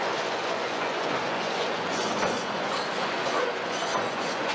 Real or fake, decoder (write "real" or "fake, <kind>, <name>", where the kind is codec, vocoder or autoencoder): fake, vocoder, Vocos